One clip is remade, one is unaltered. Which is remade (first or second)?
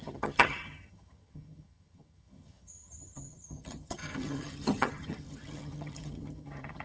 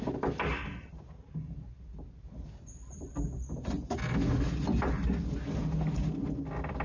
first